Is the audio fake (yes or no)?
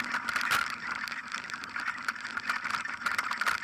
no